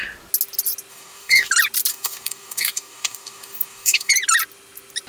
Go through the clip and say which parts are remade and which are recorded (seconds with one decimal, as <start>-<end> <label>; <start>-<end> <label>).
0.0-0.9 recorded; 0.9-1.5 remade; 1.5-1.9 recorded; 1.9-4.1 remade; 4.1-5.1 recorded